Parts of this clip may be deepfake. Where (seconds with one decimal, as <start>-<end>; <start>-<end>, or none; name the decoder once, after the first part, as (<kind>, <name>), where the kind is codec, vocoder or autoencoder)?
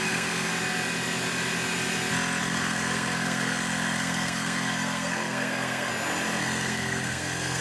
0.0-0.5 (codec, SNAC); 2.4-5.9; 6.4-7.6